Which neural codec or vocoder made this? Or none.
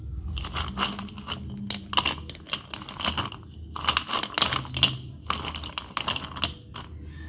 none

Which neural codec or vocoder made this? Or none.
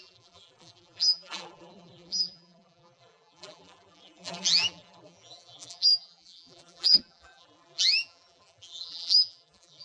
vocoder, BigVGAN v2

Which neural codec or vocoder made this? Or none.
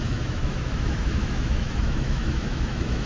autoencoder, DAC-VAE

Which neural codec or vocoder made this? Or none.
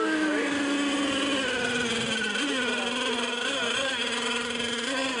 none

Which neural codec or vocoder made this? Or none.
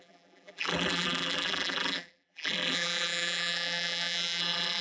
vocoder, BigVGAN v2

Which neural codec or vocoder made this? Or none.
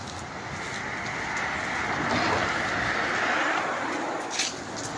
none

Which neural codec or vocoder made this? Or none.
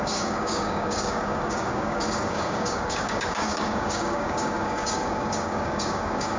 codec, DAC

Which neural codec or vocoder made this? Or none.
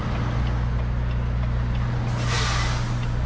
none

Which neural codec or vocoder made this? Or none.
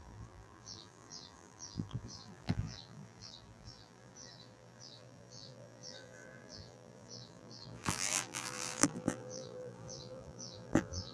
vocoder, BigVGAN v2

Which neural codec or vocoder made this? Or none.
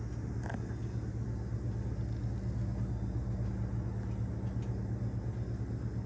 none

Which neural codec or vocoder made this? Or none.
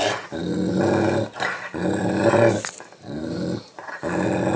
none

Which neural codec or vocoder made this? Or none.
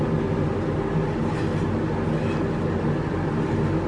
none